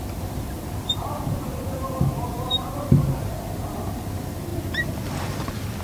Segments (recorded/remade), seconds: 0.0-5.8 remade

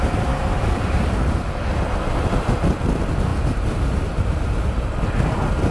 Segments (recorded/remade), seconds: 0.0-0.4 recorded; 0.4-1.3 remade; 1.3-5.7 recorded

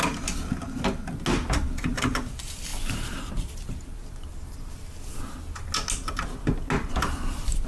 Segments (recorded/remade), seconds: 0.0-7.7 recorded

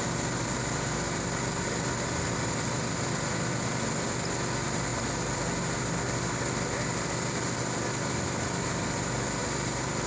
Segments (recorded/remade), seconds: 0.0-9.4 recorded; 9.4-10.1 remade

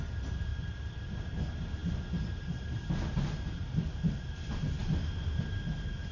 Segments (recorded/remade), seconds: 0.0-0.5 recorded; 0.5-1.1 remade; 1.1-6.1 recorded

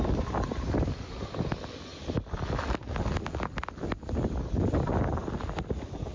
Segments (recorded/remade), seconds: 0.0-6.1 recorded

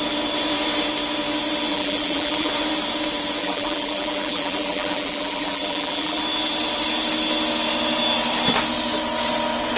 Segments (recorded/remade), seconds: 0.0-1.7 recorded; 1.7-2.5 remade; 2.5-3.4 recorded; 3.4-6.2 remade; 6.2-9.8 recorded

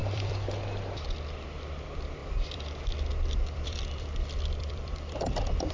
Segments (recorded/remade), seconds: 0.0-0.6 remade; 0.6-2.2 recorded; 2.2-5.7 remade